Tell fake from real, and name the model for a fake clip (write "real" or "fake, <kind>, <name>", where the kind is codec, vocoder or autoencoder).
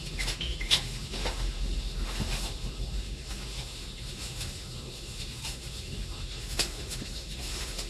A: fake, autoencoder, DAC-VAE